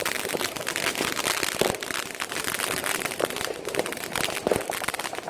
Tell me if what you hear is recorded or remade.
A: recorded